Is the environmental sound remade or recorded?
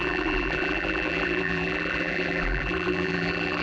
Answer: remade